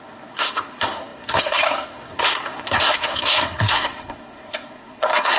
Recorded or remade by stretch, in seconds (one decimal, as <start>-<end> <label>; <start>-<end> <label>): 0.0-5.4 remade